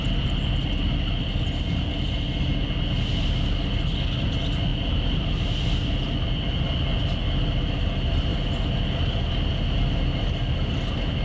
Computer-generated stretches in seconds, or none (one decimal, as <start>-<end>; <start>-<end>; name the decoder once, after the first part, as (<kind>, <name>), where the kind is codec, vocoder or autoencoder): none